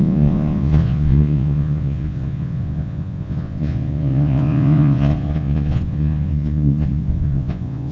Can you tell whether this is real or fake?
fake